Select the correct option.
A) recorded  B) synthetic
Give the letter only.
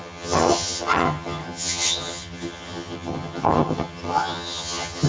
B